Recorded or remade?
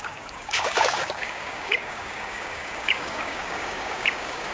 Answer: remade